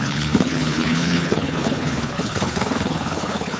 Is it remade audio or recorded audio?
remade